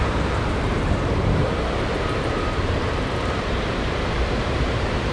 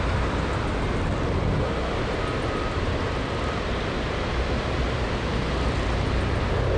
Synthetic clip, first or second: first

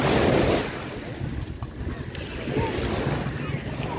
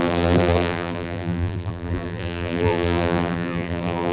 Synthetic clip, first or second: second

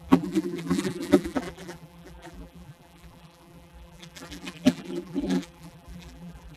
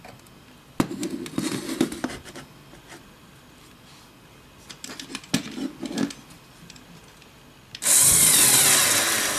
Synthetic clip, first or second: first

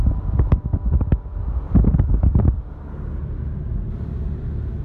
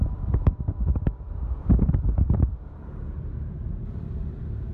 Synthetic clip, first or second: second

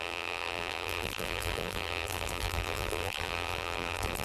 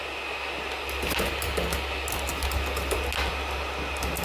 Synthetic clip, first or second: first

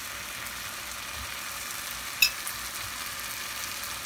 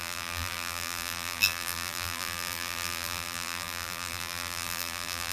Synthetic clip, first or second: second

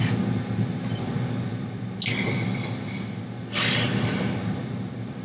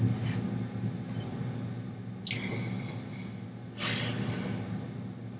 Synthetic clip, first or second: first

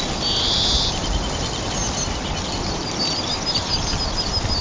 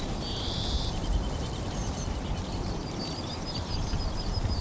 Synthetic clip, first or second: second